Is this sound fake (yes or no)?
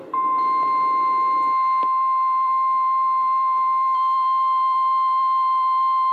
yes